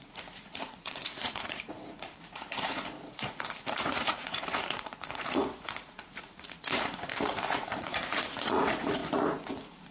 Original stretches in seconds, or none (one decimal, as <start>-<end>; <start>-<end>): none